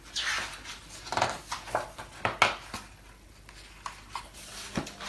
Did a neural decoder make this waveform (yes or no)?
no